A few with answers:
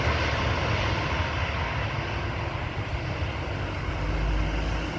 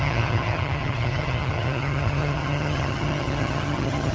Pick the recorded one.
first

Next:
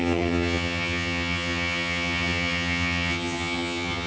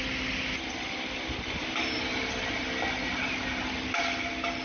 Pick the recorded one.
second